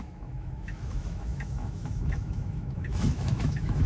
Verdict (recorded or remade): remade